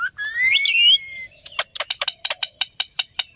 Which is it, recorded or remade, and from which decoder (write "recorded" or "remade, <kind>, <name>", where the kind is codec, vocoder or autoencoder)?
recorded